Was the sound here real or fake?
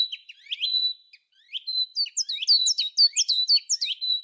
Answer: real